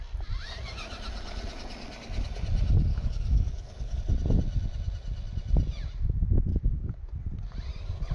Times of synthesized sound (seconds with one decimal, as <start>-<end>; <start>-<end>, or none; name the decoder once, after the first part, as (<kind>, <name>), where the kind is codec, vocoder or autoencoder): 2.9-4.0 (codec, DAC); 6.5-7.2